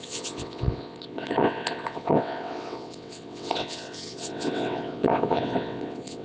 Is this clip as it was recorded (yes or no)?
no